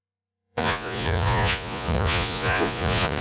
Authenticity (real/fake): fake